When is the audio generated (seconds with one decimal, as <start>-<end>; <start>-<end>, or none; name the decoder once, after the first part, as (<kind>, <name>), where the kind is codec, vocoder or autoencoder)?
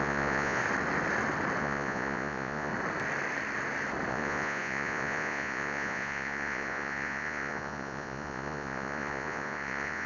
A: 0.0-0.6 (vocoder, Vocos); 1.6-2.7; 4.1-10.1